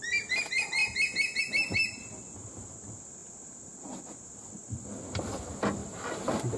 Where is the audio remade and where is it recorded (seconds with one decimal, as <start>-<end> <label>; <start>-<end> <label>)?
0.0-0.8 recorded; 0.8-1.4 remade; 1.4-3.2 recorded; 3.2-4.0 remade; 4.0-5.8 recorded; 5.8-6.6 remade